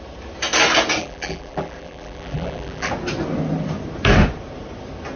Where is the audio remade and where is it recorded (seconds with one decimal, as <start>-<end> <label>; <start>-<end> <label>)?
0.0-1.0 recorded; 1.0-2.9 remade; 2.9-5.2 recorded